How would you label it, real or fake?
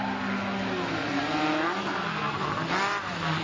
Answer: real